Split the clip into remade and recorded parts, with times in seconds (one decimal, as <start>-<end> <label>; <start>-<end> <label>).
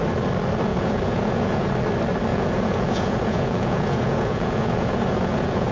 0.0-0.7 recorded; 0.7-1.7 remade; 1.7-2.3 recorded; 2.3-5.7 remade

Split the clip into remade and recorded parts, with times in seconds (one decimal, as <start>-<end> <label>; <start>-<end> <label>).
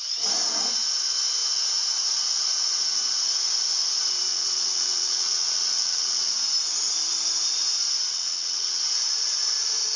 0.0-4.3 recorded; 4.3-6.3 remade; 6.3-8.1 recorded; 8.1-8.8 remade; 8.8-10.0 recorded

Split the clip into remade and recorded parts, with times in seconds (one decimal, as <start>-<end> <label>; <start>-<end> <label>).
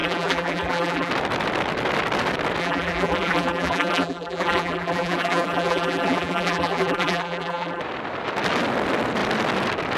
0.0-1.1 remade; 1.1-2.6 recorded; 2.6-7.8 remade; 7.8-10.0 recorded